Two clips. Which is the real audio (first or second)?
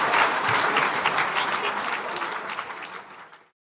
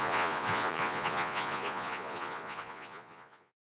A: first